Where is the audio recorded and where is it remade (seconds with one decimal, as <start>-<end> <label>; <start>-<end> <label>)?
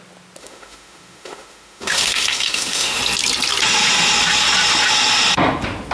0.0-0.4 recorded; 0.4-3.0 remade; 3.0-5.9 recorded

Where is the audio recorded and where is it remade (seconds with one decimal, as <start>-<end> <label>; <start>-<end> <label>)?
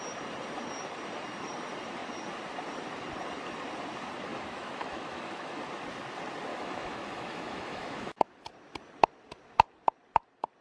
0.0-4.3 recorded; 4.3-5.6 remade; 5.6-6.5 recorded; 6.5-8.3 remade; 8.3-10.6 recorded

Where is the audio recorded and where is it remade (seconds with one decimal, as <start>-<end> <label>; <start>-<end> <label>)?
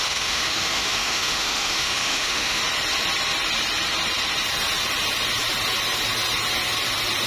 0.0-2.6 remade; 2.6-7.3 recorded